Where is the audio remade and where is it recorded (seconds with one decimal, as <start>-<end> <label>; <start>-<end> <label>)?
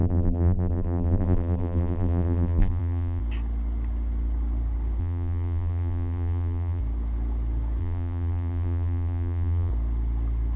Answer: 0.0-3.2 remade; 3.2-5.0 recorded; 5.0-6.8 remade; 6.8-7.8 recorded; 7.8-9.7 remade; 9.7-10.6 recorded